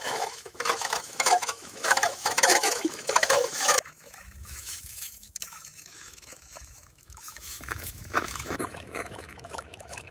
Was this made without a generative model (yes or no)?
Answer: no